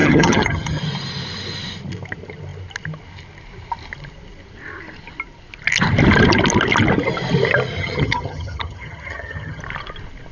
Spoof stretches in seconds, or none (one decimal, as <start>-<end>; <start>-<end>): 0.0-0.8; 7.8-9.6